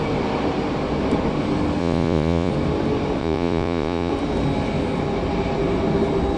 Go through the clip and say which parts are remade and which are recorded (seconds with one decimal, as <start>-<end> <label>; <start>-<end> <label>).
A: 0.0-1.8 recorded; 1.8-2.5 remade; 2.5-3.2 recorded; 3.2-4.1 remade; 4.1-6.4 recorded